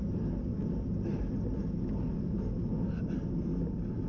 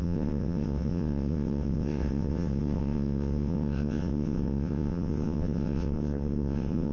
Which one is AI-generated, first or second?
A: second